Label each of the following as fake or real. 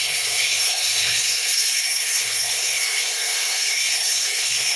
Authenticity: fake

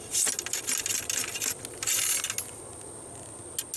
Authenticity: real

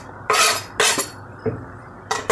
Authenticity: real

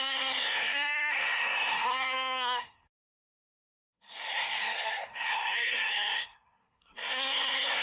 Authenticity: fake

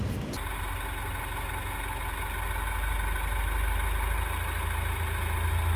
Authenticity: real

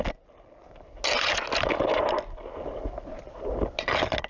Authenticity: real